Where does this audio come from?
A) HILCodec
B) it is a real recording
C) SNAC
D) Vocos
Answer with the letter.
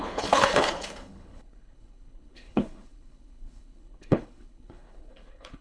A